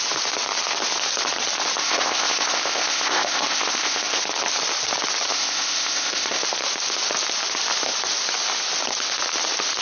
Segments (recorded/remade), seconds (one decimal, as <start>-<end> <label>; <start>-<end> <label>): 0.0-1.8 recorded; 1.8-4.2 remade; 4.2-5.3 recorded; 5.3-6.4 remade; 6.4-9.8 recorded